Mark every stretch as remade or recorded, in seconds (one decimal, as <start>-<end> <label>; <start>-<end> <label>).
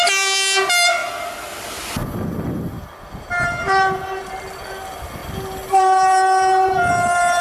0.0-7.4 recorded